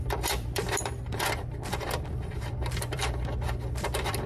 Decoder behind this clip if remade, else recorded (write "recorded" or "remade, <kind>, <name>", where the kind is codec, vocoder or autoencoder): remade, vocoder, BigVGAN v2